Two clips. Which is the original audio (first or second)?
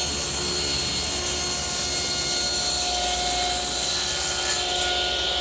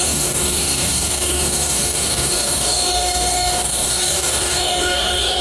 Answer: first